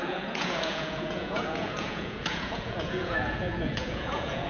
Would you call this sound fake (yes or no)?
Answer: yes